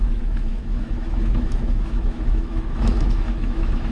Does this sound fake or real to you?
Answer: fake